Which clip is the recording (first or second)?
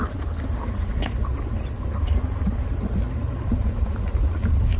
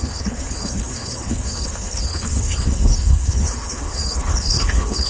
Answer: first